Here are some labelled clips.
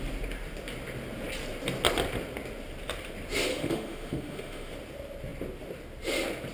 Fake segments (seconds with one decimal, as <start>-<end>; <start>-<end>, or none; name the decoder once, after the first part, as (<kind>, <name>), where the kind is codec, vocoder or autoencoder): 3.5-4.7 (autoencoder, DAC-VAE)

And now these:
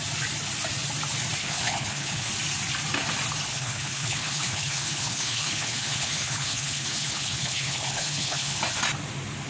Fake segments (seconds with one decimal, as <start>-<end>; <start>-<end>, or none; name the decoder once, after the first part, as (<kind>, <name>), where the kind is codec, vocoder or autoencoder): 1.4-2.3 (codec, HILCodec); 3.5-8.6

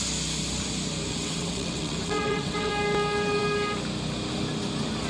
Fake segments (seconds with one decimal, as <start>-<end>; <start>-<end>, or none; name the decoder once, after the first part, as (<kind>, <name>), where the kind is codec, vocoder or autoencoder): 1.1-2.7 (vocoder, WaveNeXt)

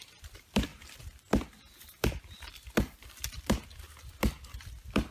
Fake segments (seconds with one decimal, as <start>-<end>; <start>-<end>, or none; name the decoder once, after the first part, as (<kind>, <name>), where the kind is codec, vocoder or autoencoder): none

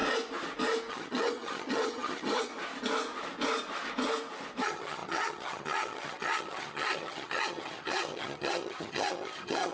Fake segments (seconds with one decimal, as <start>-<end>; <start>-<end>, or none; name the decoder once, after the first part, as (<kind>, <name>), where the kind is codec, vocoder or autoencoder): 0.9-2.5 (vocoder, HiFi-GAN); 4.6-9.7

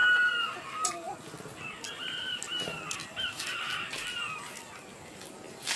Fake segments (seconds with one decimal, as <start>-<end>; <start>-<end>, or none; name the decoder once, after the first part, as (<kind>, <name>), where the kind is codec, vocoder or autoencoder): none